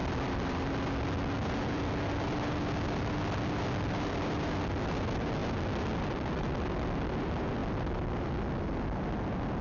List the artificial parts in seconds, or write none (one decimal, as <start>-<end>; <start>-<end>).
0.0-5.4; 6.0-7.6